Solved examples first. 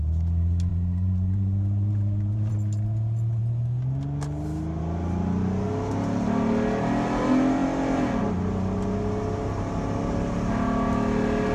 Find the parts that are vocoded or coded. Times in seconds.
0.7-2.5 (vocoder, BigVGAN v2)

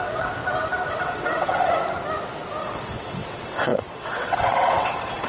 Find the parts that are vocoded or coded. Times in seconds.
0.0-0.4 (vocoder, WaveNeXt); 0.9-1.8; 2.6-5.3

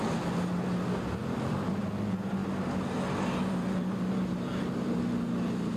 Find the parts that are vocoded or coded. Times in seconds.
1.2-1.9 (vocoder, BigVGAN v2)

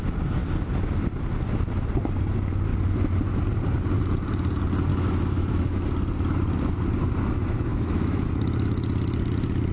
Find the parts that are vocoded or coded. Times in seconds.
4.9-5.8 (autoencoder, DAC-VAE); 7.7-8.3

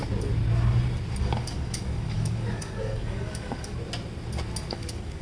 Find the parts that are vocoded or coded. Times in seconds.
1.2-3.7 (codec, DAC); 4.7-5.2

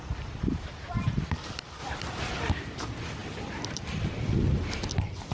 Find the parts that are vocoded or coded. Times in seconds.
none

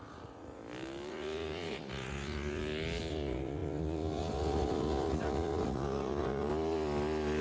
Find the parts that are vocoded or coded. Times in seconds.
0.0-0.6 (vocoder, Vocos); 1.1-2.6; 3.1-6.5

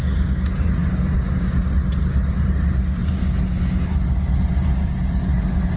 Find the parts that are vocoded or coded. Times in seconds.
none